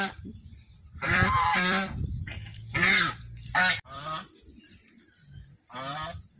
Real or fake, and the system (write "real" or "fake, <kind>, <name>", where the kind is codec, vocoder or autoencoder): fake, vocoder, BigVGAN v2